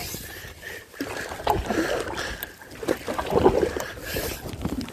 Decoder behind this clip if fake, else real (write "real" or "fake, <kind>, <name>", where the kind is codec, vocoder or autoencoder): real